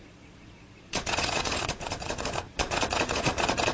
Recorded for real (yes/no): no